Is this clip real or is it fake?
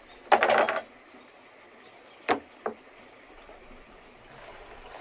real